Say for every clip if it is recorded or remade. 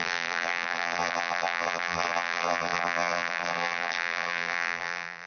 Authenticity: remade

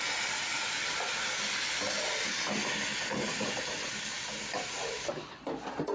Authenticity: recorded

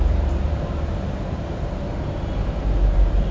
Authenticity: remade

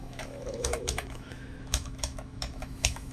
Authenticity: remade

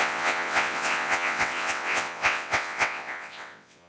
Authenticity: remade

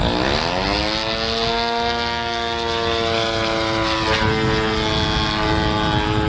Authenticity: recorded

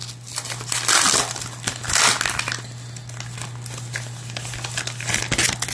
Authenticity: recorded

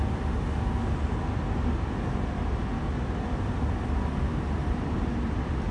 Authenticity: recorded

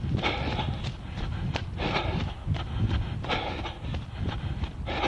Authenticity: recorded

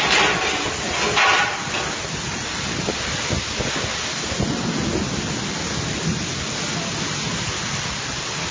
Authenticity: recorded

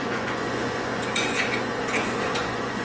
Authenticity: remade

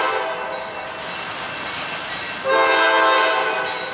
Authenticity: recorded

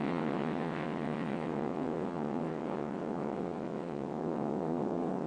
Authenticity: remade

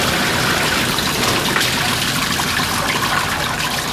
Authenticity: recorded